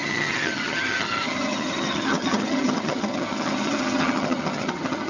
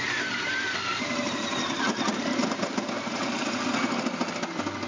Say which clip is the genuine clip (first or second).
second